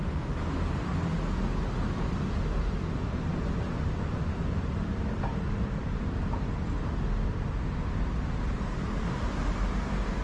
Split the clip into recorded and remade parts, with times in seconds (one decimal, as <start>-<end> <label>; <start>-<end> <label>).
0.0-10.2 recorded